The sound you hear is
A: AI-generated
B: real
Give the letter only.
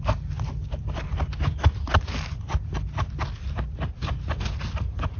B